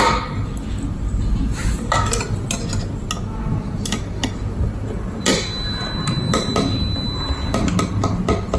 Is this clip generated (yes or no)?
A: no